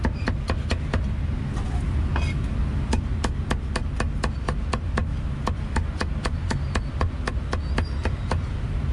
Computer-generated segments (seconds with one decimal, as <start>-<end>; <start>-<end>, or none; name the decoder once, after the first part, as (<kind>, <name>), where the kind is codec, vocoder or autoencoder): none